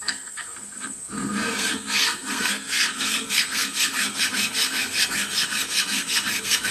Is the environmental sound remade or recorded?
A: remade